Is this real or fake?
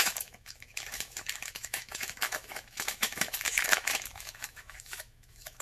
fake